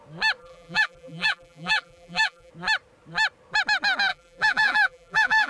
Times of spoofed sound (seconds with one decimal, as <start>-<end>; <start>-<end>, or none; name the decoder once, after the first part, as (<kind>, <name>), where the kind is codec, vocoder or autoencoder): 0.4-2.5 (vocoder, BigVGAN v2); 4.1-5.5